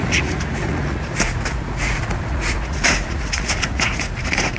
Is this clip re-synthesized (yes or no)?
yes